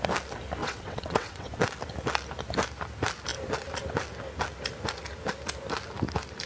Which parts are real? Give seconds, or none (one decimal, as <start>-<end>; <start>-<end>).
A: 0.0-0.6; 1.5-6.5